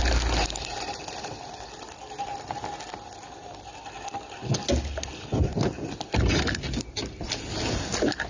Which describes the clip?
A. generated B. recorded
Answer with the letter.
B